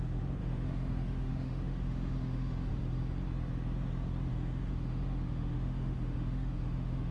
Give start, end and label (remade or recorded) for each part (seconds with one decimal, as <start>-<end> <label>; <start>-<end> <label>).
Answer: 0.0-2.7 remade; 2.7-4.3 recorded; 4.3-7.1 remade